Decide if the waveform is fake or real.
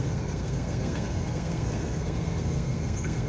fake